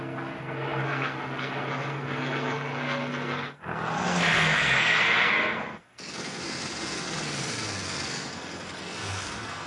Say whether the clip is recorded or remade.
remade